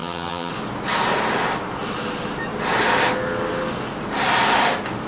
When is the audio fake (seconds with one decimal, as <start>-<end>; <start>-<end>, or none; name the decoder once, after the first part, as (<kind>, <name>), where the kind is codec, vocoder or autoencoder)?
0.0-0.5 (vocoder, HiFi-GAN)